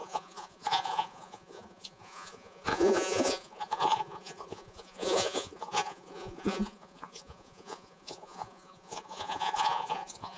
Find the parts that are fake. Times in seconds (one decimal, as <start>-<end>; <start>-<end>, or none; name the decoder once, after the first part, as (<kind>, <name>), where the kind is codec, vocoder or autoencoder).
0.0-10.4 (vocoder, Vocos)